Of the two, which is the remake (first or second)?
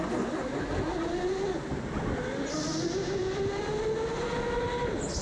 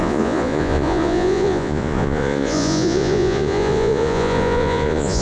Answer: second